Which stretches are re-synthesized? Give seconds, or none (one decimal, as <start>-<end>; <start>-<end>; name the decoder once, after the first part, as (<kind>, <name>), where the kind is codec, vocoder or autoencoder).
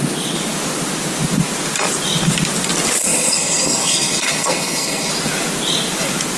3.0-5.1 (codec, SNAC)